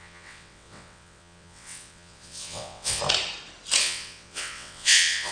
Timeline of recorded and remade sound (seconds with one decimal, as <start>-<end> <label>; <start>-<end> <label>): 0.0-3.0 remade; 3.0-3.8 recorded; 3.8-5.3 remade